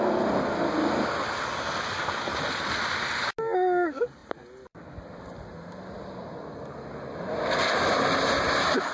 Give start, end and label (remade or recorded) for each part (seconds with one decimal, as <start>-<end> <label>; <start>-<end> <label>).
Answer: 0.0-8.9 recorded